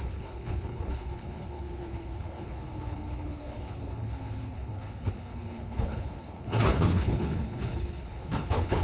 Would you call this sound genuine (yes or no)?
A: no